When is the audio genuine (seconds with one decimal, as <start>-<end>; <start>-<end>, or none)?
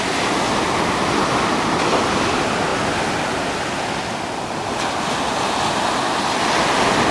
0.0-7.1